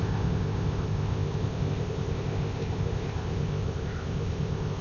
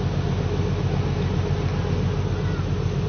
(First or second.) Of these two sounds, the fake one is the first